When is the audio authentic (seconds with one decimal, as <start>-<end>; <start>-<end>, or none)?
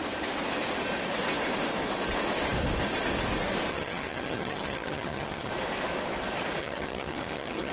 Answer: 0.0-3.7; 5.5-6.6